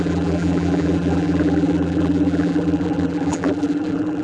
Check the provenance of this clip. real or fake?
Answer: fake